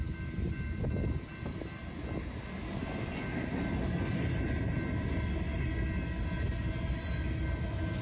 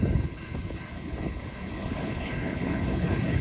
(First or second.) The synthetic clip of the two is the second